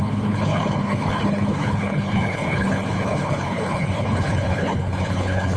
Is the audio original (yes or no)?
no